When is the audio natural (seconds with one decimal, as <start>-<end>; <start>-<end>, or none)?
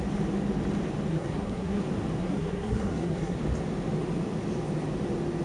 0.0-1.1; 1.8-2.2; 3.4-5.4